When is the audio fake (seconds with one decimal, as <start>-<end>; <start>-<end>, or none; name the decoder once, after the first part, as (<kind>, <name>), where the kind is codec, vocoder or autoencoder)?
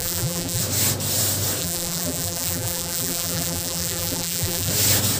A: 0.0-0.6 (vocoder, BigVGAN v2); 1.6-4.7